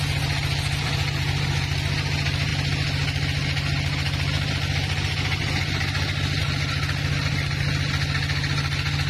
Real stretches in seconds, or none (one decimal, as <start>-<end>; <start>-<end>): 0.0-9.1